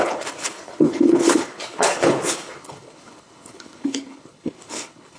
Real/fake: fake